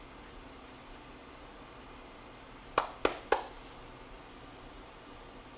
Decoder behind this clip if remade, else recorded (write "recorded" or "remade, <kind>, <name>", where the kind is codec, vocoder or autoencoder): recorded